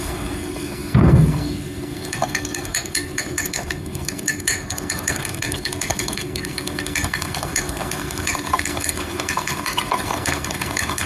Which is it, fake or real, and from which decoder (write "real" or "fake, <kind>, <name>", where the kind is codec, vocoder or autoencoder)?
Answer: fake, codec, SNAC